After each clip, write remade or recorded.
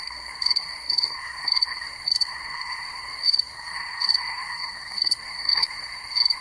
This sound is remade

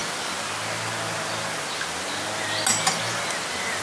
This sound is recorded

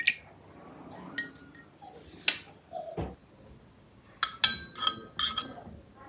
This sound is recorded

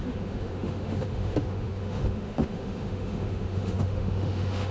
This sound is remade